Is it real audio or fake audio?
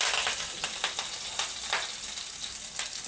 real